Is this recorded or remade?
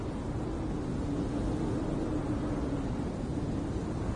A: recorded